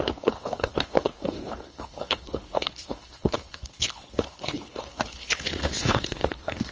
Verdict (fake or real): fake